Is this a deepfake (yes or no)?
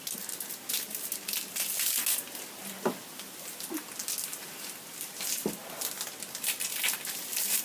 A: no